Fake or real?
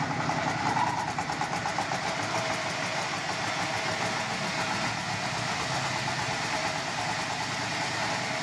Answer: real